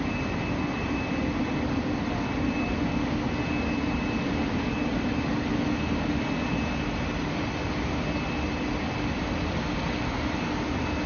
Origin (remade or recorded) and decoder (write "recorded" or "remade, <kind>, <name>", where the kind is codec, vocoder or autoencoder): recorded